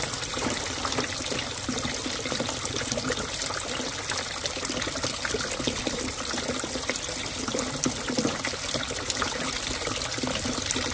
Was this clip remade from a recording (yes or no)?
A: no